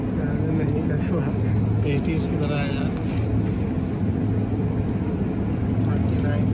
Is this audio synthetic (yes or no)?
no